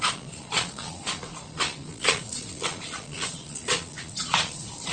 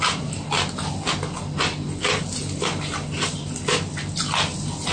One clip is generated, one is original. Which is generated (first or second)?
first